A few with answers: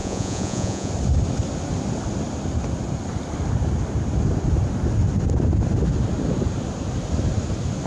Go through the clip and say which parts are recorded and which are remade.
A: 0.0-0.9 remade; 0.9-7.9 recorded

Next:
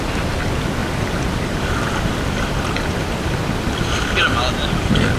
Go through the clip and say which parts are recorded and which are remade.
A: 0.0-0.8 recorded; 0.8-3.9 remade; 3.9-5.2 recorded

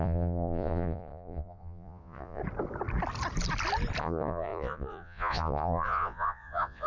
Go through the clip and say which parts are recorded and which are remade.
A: 0.0-2.4 remade; 2.4-4.0 recorded; 4.0-6.9 remade